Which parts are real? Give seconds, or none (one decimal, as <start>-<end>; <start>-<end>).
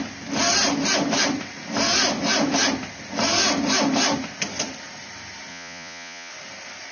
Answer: 0.0-5.5; 6.3-6.9